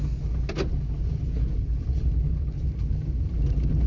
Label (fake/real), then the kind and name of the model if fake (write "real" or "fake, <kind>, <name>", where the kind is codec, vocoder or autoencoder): real